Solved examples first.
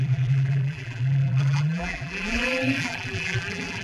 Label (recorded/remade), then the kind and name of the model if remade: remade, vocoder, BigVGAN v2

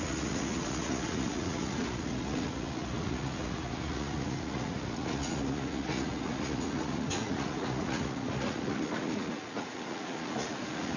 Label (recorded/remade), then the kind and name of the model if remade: remade, vocoder, Vocos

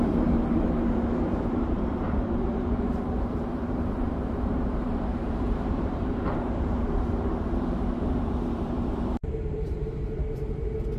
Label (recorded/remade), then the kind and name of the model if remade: remade, vocoder, BigVGAN v2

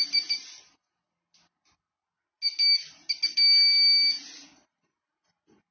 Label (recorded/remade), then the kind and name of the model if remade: recorded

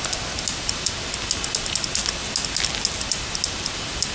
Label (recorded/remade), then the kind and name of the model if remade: recorded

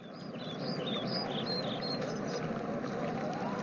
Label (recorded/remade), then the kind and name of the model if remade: recorded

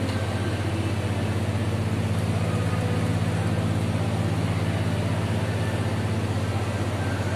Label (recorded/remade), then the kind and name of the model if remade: recorded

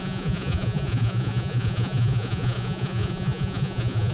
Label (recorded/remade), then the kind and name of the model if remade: remade, vocoder, Vocos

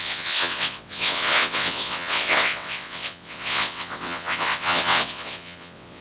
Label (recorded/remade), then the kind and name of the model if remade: remade, vocoder, WaveNeXt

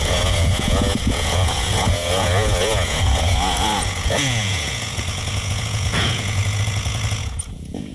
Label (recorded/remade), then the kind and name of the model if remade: remade, vocoder, Vocos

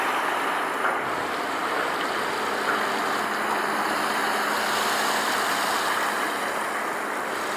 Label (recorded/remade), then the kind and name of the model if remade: recorded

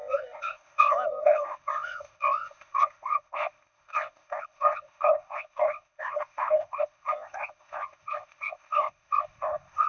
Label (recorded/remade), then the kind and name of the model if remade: remade, codec, ZipCodec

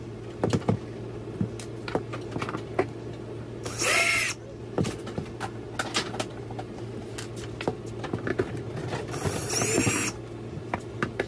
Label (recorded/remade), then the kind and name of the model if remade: recorded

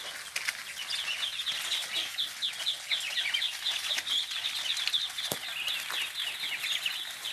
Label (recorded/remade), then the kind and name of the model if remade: recorded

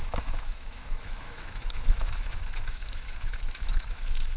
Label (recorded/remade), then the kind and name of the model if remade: remade, autoencoder, DAC-VAE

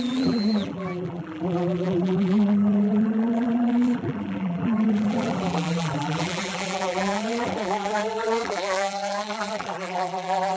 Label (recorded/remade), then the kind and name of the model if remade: remade, vocoder, BigVGAN v2